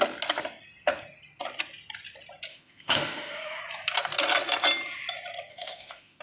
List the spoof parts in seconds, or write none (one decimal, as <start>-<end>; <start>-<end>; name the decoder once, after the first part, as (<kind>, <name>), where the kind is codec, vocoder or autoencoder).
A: 2.5-3.6 (autoencoder, DAC-VAE); 5.5-6.2